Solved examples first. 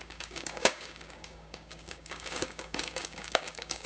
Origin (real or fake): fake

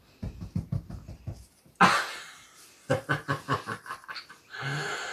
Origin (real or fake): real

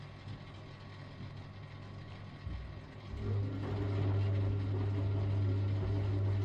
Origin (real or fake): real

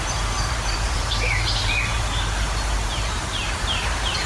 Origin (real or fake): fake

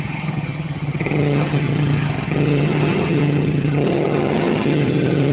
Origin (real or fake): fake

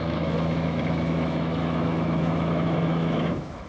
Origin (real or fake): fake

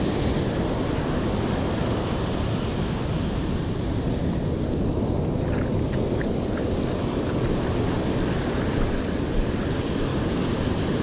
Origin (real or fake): real